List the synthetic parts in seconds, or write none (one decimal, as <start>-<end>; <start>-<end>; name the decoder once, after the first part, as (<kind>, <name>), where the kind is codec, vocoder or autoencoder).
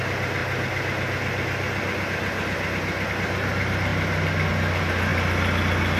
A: none